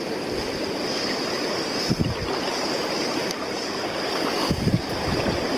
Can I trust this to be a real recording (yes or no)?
no